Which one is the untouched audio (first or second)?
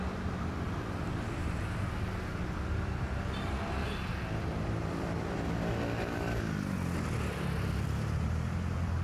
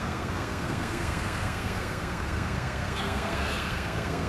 first